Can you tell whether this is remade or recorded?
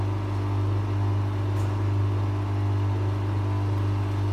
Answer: recorded